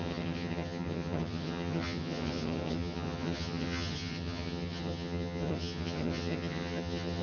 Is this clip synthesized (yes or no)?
yes